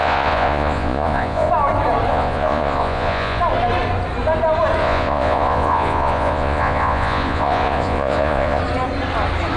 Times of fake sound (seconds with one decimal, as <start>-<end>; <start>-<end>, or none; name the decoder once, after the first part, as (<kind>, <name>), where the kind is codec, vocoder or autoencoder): 0.0-1.5 (vocoder, Vocos); 2.1-3.4; 4.8-8.6